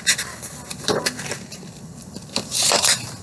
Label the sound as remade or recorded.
recorded